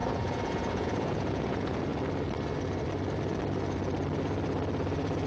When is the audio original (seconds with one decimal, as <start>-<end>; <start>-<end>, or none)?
1.9-5.3